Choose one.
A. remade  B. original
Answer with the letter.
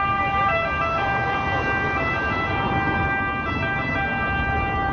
B